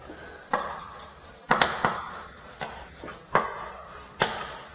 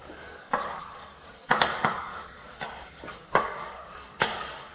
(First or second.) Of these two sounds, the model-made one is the second